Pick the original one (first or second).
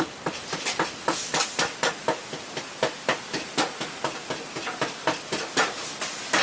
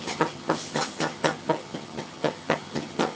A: first